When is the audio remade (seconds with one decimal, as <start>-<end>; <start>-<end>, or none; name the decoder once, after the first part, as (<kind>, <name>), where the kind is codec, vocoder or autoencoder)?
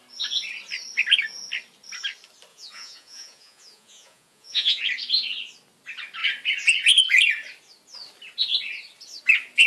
2.5-4.8 (vocoder, Vocos)